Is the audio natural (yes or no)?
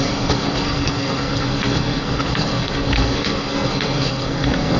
no